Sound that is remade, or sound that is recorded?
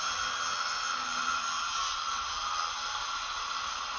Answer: recorded